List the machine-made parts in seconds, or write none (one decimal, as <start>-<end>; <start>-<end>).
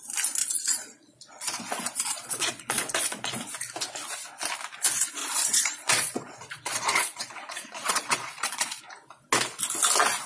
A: 0.4-3.5; 5.2-8.8